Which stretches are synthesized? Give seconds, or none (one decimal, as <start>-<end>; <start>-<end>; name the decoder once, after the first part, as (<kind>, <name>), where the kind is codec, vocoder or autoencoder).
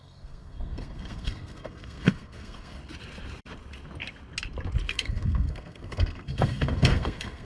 0.0-2.8 (codec, SNAC); 4.9-7.4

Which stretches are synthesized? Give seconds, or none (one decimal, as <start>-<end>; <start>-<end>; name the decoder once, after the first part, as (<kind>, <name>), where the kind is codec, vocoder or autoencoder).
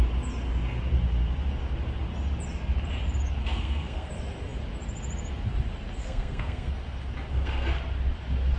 3.4-4.1 (codec, SNAC); 6.0-6.7; 7.3-7.8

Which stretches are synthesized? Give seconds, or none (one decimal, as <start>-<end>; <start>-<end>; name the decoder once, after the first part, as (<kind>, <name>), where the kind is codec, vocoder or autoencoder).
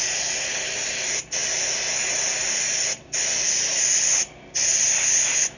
none